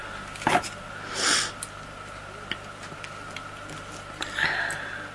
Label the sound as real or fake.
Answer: real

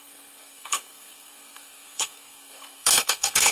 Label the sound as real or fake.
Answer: fake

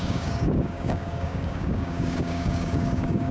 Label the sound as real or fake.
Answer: fake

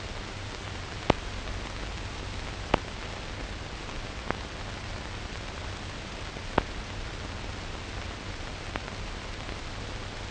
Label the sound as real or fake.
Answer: real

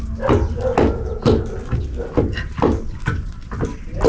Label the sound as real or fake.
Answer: real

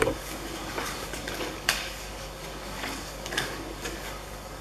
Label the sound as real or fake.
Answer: fake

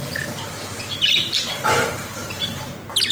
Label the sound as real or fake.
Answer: real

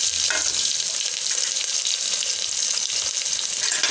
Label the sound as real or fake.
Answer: real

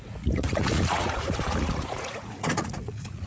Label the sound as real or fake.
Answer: fake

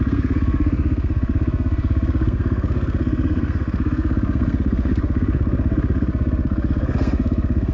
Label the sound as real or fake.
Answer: fake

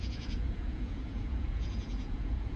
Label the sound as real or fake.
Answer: fake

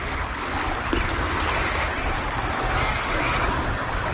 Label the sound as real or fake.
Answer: real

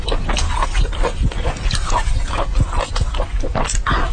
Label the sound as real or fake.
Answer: real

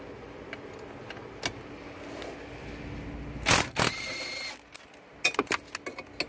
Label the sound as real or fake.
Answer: real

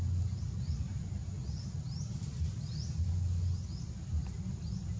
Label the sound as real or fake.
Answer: real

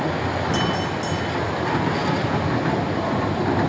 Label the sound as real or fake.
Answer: real